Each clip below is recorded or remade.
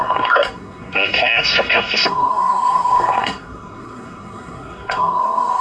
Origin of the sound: remade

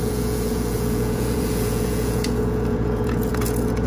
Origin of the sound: remade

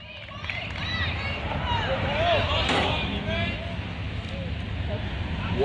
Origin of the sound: recorded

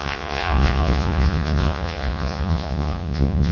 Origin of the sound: remade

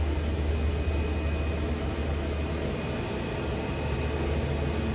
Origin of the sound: recorded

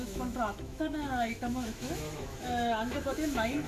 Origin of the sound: remade